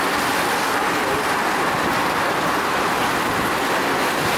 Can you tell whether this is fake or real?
real